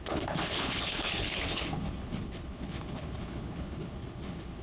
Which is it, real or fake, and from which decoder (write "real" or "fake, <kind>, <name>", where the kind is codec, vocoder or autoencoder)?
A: fake, codec, HILCodec